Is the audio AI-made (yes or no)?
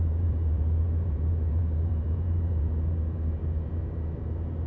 yes